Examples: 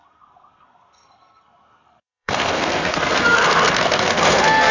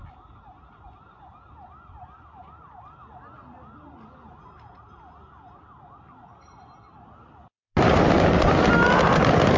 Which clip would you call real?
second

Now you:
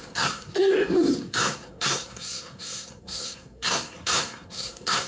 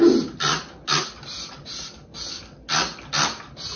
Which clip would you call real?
second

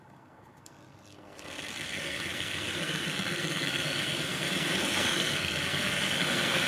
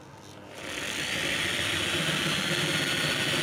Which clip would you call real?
second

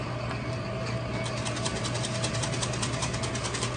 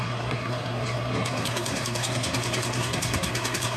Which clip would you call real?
first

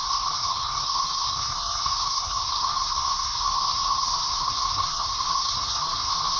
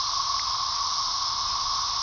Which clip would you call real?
second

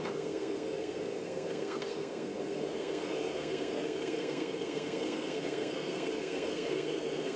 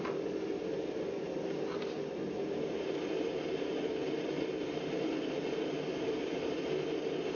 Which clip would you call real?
second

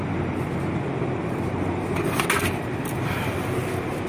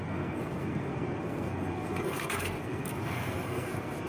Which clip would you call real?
first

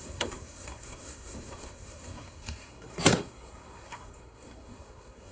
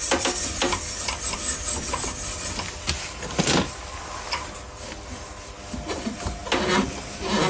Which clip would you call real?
second